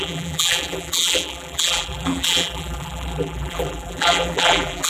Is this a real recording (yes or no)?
no